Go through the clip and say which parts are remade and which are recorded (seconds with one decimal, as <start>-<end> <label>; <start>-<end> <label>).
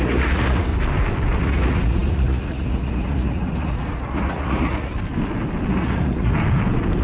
0.0-0.7 remade; 0.7-1.4 recorded; 1.4-4.9 remade; 4.9-5.7 recorded; 5.7-6.3 remade; 6.3-7.0 recorded